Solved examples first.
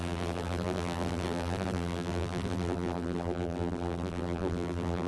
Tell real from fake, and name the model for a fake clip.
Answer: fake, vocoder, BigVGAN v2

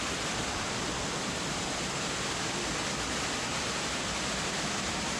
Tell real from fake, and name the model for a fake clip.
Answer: real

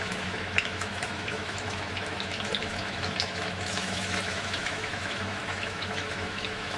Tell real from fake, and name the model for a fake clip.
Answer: fake, autoencoder, DAC-VAE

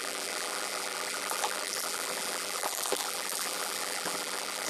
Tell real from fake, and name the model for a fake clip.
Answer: fake, vocoder, BigVGAN v2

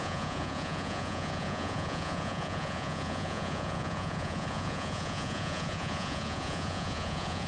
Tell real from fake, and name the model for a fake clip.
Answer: fake, vocoder, Vocos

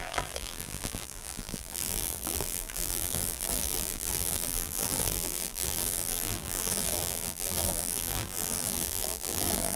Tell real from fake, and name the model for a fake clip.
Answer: fake, vocoder, BigVGAN v2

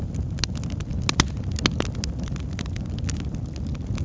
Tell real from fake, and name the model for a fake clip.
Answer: real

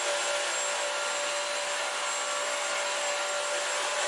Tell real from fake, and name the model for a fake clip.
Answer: real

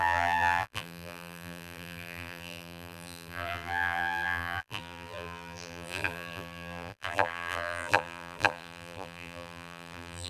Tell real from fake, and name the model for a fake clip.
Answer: fake, vocoder, BigVGAN v2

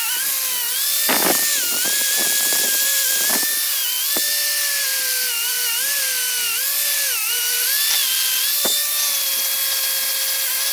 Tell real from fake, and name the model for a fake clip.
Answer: real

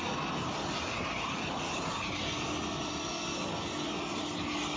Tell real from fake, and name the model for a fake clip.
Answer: real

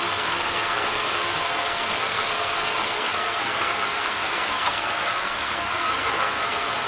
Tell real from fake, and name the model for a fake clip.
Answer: fake, codec, SNAC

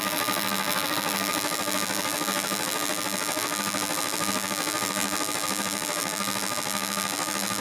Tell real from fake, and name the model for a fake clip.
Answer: fake, vocoder, BigVGAN v2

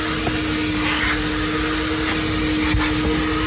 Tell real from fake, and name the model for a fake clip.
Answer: real